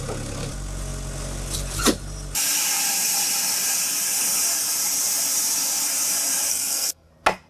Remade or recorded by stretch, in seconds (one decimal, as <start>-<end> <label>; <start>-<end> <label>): 0.0-6.5 recorded; 6.5-7.1 remade; 7.1-7.5 recorded